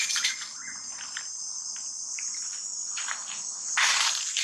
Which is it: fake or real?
real